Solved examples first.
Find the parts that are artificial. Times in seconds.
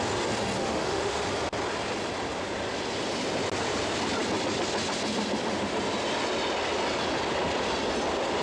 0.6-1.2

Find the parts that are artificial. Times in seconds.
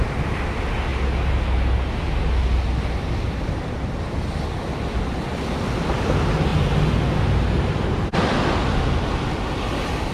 none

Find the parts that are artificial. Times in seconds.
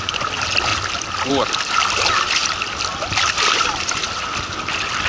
0.0-0.7; 1.3-2.4; 3.0-5.1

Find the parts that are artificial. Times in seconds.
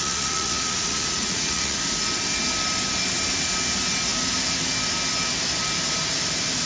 0.0-1.8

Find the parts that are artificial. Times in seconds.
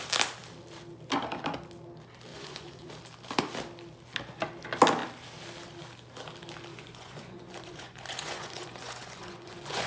2.3-2.9; 6.7-9.9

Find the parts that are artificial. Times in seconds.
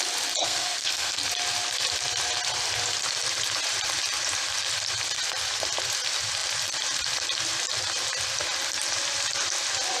0.4-1.2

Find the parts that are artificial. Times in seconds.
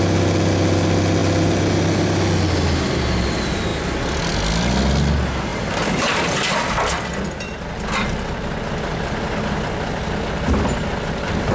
none